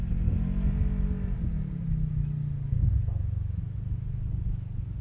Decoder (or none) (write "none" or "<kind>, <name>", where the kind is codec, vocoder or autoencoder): none